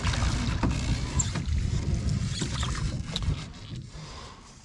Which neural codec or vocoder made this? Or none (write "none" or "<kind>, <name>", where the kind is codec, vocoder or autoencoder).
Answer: none